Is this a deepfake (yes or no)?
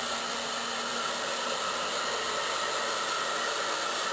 no